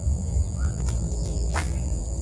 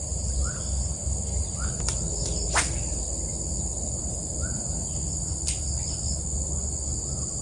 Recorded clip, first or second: second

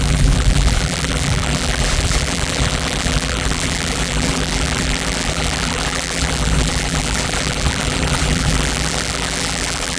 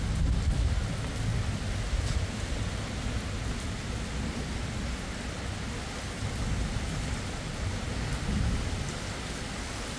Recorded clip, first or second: second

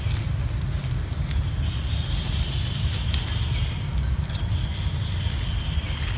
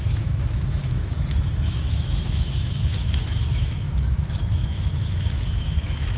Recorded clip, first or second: first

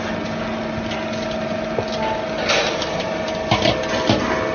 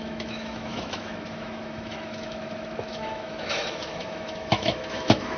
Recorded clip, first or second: first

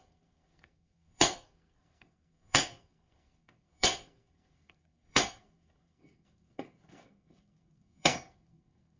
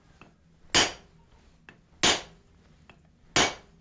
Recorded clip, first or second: second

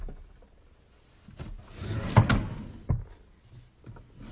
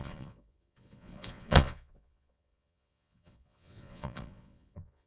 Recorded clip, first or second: first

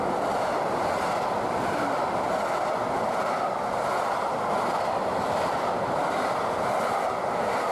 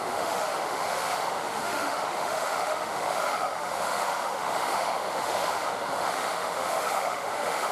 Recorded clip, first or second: first